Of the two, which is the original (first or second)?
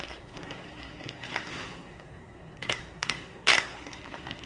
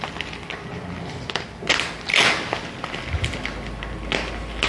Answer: second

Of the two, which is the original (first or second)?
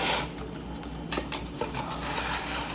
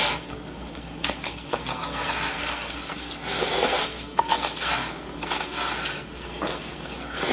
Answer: first